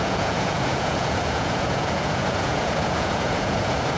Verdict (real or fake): fake